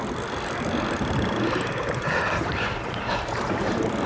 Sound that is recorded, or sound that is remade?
recorded